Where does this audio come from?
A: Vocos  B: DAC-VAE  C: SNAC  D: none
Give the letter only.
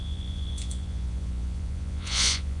A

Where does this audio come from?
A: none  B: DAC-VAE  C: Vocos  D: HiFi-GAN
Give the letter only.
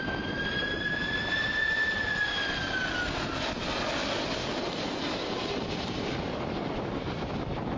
A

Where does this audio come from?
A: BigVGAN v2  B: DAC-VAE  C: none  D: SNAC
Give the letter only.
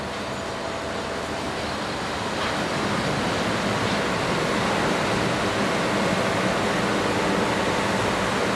C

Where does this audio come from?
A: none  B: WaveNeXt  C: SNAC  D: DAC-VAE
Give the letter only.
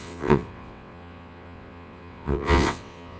B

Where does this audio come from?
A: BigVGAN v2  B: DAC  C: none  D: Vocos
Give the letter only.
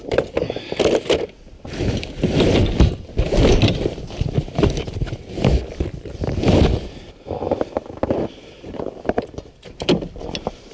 A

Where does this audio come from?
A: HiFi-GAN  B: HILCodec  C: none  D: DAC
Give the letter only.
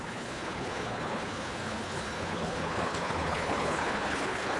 B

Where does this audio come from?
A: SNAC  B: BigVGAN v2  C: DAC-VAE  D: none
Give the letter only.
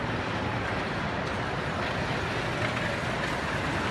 D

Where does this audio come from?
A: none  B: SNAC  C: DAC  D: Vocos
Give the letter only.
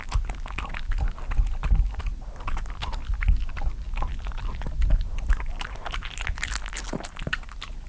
A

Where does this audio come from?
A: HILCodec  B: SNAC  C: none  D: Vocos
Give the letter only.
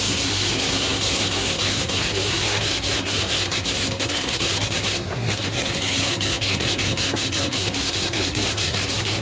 B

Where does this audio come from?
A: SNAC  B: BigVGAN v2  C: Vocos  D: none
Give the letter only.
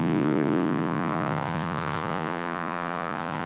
C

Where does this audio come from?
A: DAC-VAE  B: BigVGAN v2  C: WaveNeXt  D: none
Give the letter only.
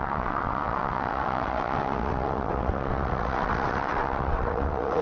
C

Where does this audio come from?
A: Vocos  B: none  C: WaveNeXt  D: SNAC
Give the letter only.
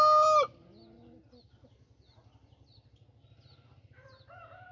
B